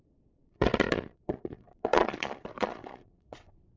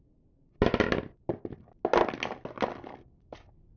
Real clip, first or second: second